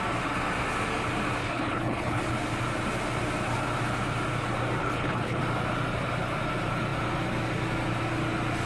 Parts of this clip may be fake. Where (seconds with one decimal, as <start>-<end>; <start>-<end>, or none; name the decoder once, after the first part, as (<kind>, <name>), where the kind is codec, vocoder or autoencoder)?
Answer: 1.4-2.2 (codec, HILCodec); 4.8-5.4